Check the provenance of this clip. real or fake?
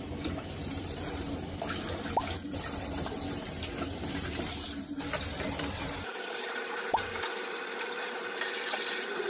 fake